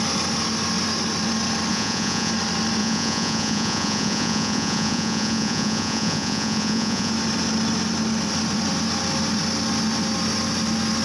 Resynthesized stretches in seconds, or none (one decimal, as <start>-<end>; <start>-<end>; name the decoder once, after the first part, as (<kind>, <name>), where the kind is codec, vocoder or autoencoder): 1.7-2.3 (vocoder, Vocos); 2.8-7.1